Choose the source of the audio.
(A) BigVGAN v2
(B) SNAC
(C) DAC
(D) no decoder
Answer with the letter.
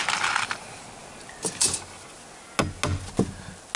D